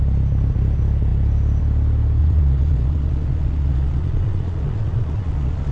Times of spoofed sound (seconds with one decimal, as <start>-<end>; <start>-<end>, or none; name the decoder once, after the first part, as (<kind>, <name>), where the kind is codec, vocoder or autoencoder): 2.2-5.7 (vocoder, Vocos)